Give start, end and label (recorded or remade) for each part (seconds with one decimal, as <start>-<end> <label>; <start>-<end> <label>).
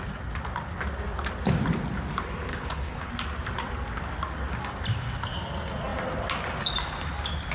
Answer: 0.0-2.5 recorded; 2.5-3.1 remade; 3.1-7.5 recorded